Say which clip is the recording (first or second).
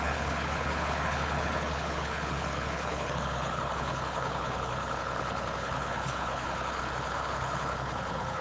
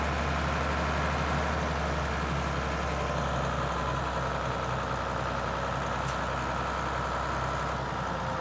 second